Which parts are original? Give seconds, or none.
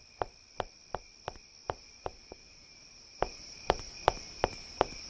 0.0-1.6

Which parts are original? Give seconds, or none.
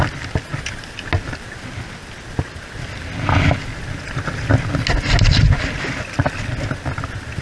0.0-7.4